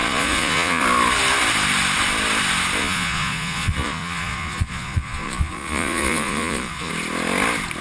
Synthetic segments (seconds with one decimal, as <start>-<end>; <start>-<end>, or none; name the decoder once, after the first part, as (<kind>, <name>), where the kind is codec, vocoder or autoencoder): 0.0-0.8 (vocoder, Vocos); 2.8-6.9